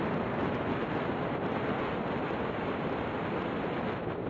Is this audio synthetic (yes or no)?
no